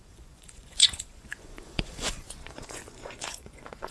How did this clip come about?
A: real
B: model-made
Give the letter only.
B